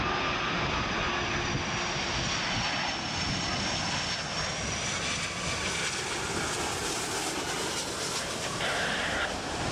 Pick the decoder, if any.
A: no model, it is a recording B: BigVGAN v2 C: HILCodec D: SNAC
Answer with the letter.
A